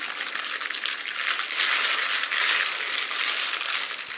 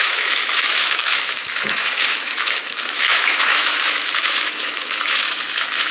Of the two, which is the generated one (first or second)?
second